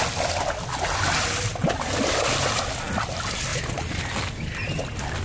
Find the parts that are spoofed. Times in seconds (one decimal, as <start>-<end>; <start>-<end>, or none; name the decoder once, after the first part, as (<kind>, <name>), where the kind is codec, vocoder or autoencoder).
3.5-4.0 (vocoder, Vocos)